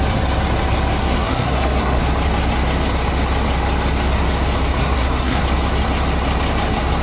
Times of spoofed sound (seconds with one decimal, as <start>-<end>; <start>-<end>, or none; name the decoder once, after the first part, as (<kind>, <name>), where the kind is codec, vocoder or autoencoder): 1.0-2.0 (codec, SNAC); 4.8-5.4